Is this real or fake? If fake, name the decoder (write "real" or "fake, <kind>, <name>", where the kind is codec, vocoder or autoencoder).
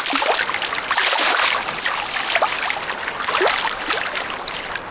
real